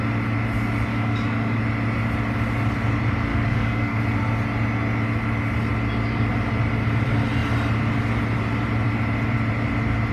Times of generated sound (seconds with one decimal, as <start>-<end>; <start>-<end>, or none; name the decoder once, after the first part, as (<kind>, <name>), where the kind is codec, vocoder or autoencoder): 0.9-1.6 (codec, DAC); 3.3-4.0